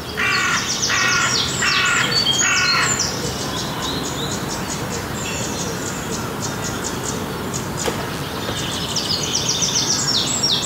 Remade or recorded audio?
recorded